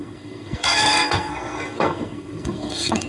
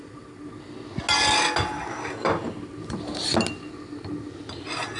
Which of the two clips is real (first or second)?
second